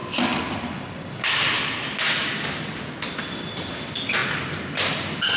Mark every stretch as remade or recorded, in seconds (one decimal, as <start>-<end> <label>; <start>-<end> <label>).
0.0-5.4 recorded